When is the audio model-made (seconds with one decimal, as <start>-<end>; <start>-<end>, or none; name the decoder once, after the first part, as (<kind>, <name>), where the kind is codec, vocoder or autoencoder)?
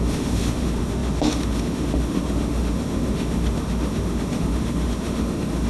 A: 0.0-5.7 (autoencoder, DAC-VAE)